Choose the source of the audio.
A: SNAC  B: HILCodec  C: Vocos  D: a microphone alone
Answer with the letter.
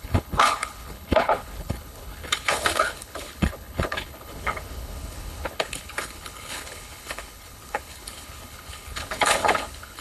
B